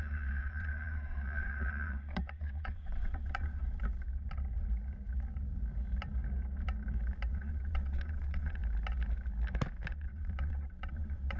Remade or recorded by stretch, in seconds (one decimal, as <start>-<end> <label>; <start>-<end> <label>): 0.0-3.6 remade; 3.6-7.3 recorded; 7.3-8.6 remade; 8.6-9.9 recorded; 9.9-11.4 remade